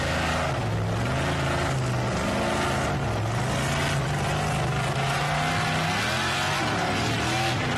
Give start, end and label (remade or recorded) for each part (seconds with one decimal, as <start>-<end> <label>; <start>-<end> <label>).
0.0-7.8 recorded